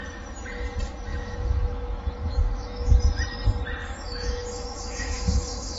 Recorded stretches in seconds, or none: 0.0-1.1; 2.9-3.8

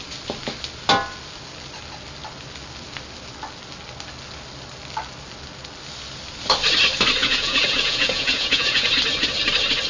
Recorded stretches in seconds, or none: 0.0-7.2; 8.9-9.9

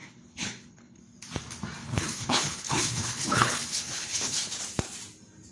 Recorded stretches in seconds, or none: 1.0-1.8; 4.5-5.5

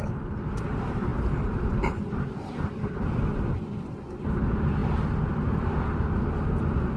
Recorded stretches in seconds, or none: 0.0-7.0